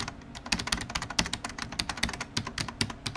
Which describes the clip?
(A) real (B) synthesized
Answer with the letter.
A